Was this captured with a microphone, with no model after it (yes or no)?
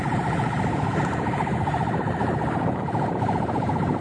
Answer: no